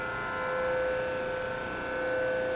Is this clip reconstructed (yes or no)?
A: no